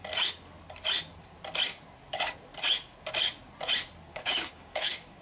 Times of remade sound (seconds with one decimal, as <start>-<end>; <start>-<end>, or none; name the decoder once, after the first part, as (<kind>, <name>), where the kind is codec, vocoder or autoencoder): 4.1-5.2 (codec, DAC)